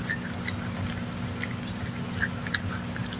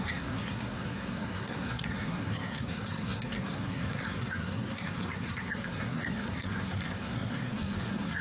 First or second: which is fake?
second